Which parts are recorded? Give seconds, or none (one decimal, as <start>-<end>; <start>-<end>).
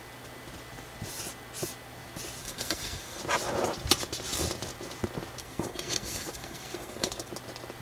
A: 0.0-2.4; 3.2-5.4; 7.3-7.8